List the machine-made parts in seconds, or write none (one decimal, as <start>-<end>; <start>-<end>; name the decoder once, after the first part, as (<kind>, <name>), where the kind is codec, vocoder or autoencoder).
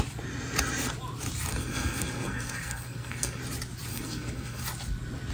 1.5-3.4 (codec, SNAC); 3.9-4.6